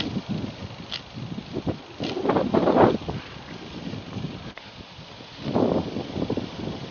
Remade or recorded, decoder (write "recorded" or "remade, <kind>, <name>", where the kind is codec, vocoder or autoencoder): recorded